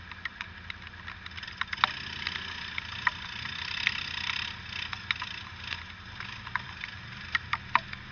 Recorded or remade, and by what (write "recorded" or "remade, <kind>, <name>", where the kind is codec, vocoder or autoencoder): recorded